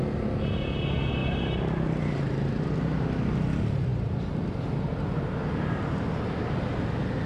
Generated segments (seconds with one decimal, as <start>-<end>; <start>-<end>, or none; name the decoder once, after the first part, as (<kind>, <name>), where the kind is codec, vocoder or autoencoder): 1.2-1.7 (vocoder, BigVGAN v2)